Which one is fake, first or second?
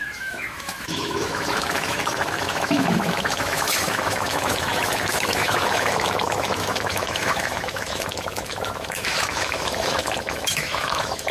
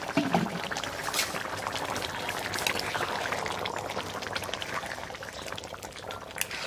first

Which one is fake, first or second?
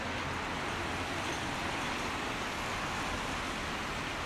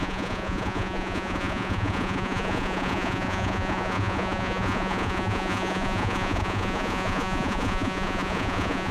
second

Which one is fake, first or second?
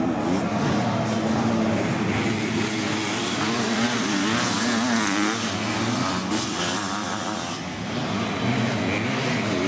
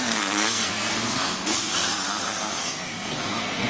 second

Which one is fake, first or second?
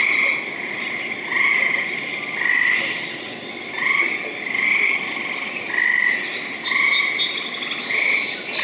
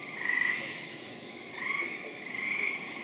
second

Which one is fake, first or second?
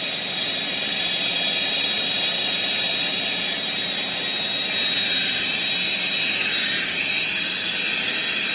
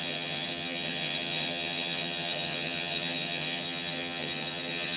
second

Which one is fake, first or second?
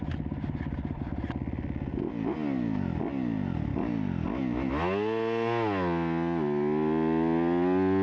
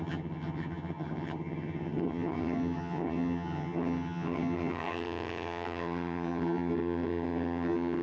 second